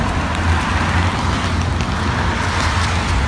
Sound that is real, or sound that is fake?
real